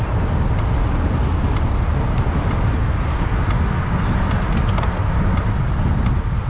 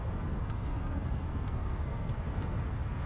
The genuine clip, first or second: first